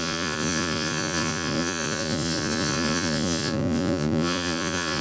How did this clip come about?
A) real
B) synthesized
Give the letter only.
B